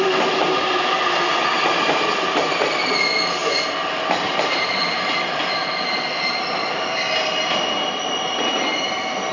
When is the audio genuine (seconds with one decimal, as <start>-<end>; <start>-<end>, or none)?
0.0-9.3